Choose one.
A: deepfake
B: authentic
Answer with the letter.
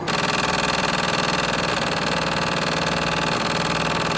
B